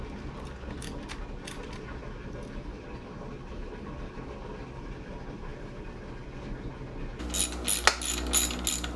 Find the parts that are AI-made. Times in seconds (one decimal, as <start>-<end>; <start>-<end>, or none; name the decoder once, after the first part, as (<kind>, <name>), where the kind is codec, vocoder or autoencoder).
none